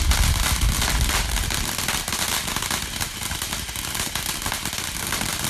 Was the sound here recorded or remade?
recorded